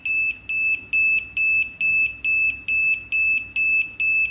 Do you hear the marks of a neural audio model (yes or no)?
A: no